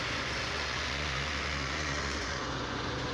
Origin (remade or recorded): remade